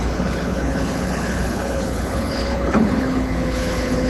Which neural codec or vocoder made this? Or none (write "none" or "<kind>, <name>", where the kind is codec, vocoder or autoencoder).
codec, HILCodec